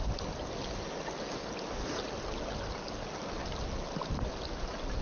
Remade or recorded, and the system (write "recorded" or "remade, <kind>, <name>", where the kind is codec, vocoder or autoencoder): recorded